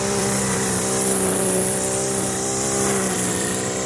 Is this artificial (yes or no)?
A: yes